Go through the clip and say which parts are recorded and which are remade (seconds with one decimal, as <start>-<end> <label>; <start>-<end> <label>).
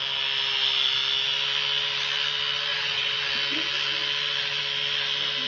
0.0-2.7 recorded; 2.7-3.2 remade; 3.2-5.5 recorded